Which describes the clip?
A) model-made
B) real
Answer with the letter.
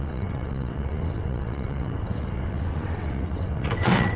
A